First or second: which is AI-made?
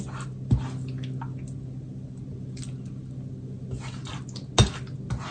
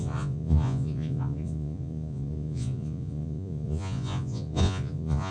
second